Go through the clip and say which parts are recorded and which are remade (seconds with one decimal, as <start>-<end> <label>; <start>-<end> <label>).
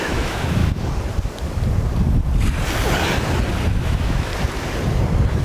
0.0-0.6 remade; 0.6-3.8 recorded; 3.8-4.3 remade; 4.3-5.4 recorded